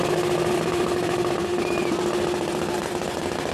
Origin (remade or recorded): remade